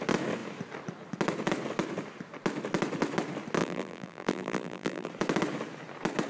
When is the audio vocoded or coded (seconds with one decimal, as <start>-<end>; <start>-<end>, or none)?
3.6-5.1